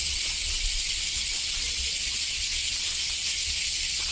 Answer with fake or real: fake